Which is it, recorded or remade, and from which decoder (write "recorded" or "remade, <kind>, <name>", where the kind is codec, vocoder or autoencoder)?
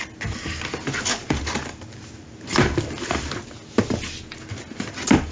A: recorded